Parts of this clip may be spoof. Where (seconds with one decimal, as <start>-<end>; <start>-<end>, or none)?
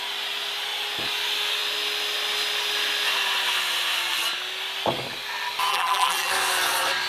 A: 5.7-6.3